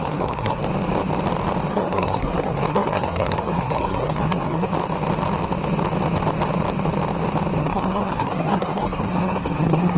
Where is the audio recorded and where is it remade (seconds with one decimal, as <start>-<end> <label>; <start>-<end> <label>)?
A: 0.0-0.6 remade; 0.6-1.7 recorded; 1.7-4.7 remade; 4.7-7.6 recorded; 7.6-10.0 remade